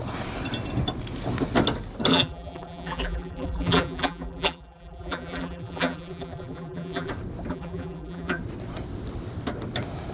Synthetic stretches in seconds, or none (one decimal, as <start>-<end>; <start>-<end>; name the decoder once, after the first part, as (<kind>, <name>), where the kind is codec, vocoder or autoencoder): 2.1-7.1 (vocoder, BigVGAN v2); 7.5-8.4